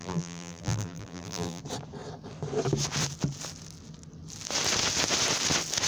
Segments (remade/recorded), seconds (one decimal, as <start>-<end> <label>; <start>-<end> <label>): 0.0-1.6 remade; 1.6-5.9 recorded